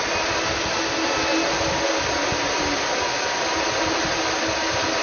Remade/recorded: recorded